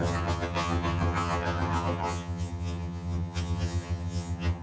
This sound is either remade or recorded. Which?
remade